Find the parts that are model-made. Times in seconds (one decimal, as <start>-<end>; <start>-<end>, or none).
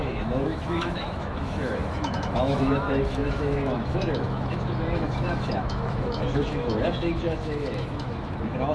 0.0-8.7